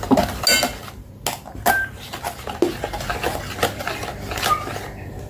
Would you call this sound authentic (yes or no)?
yes